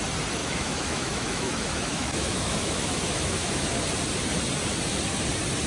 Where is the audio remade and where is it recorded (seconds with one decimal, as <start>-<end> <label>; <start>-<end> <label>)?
0.0-0.4 recorded; 0.4-3.8 remade; 3.8-5.7 recorded